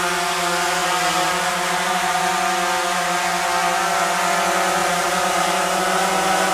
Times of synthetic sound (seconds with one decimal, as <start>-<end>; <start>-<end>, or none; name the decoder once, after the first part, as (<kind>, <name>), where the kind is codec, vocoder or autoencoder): 0.8-2.2 (vocoder, BigVGAN v2); 4.8-6.1